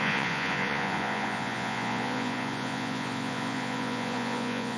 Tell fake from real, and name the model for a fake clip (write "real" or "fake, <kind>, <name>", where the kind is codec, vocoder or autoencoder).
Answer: fake, vocoder, Vocos